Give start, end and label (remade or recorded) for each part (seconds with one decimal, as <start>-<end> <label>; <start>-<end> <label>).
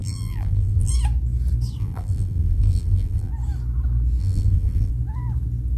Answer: 0.0-0.9 remade; 0.9-1.8 recorded; 1.8-3.3 remade; 3.3-4.2 recorded; 4.2-4.9 remade; 4.9-5.8 recorded